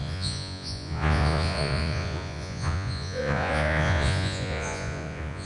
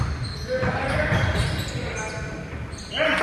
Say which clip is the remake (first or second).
first